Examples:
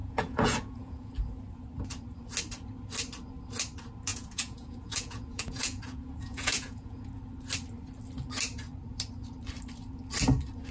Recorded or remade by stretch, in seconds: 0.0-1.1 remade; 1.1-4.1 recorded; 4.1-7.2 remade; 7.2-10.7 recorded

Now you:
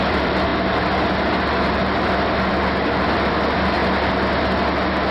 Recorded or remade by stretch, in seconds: 0.0-0.5 remade; 0.5-1.7 recorded; 1.7-3.8 remade; 3.8-5.1 recorded